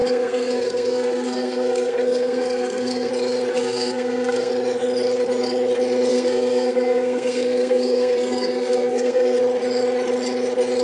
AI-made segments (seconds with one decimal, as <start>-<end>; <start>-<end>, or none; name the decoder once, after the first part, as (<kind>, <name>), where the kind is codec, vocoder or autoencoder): 0.0-3.1 (codec, SNAC); 3.5-4.5; 6.1-9.4